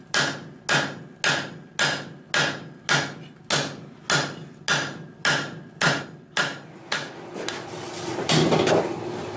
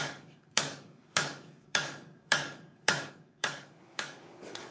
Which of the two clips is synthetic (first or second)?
second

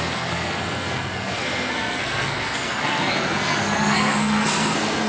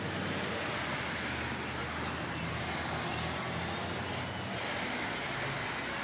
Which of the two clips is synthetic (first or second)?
first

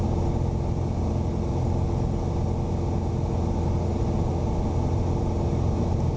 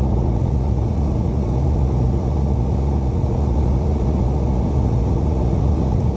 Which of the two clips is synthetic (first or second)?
second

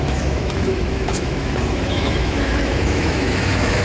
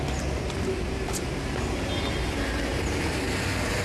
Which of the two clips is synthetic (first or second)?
first